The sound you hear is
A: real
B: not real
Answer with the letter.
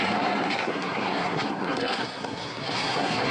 B